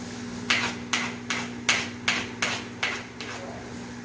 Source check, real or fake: real